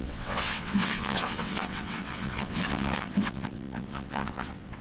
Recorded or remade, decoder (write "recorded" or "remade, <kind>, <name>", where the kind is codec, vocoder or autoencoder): remade, vocoder, WaveNeXt